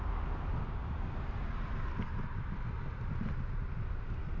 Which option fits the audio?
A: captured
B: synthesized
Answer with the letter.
A